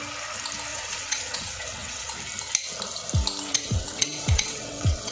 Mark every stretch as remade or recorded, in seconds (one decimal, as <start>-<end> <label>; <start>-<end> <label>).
0.0-0.7 recorded; 0.7-2.1 remade; 2.1-3.5 recorded; 3.5-5.1 remade